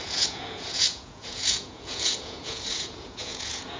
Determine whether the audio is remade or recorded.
remade